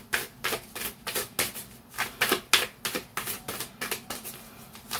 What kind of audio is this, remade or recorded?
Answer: recorded